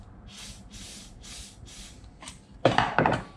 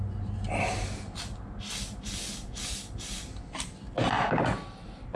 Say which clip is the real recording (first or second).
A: second